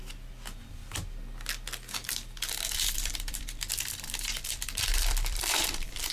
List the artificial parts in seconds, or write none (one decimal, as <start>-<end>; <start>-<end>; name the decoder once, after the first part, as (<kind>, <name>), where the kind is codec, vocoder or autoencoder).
2.0-6.1 (vocoder, BigVGAN v2)